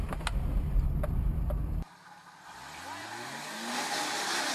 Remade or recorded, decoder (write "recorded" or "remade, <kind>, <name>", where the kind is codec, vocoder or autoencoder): recorded